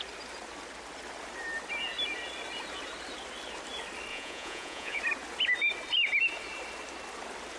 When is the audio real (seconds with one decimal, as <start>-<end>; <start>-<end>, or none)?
0.0-4.1; 5.0-7.6